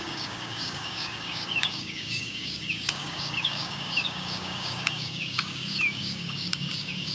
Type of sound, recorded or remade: remade